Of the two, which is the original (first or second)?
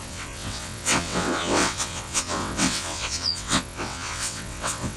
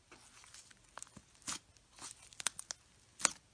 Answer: second